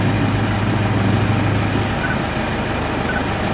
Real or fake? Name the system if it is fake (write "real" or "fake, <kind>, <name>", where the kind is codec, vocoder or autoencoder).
real